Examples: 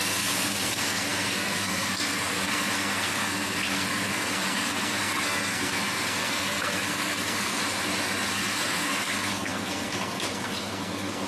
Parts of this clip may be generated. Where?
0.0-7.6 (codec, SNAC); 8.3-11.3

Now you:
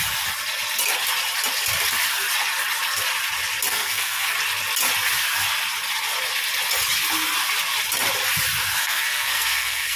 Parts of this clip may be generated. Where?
3.7-4.3 (codec, SNAC); 8.8-10.0

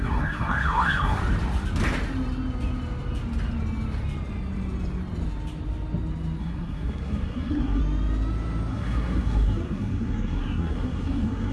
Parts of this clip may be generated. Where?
0.0-1.2 (codec, SNAC); 6.4-7.8; 8.7-11.5